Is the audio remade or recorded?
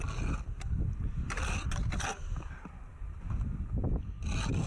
recorded